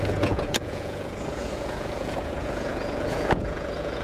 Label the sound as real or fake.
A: fake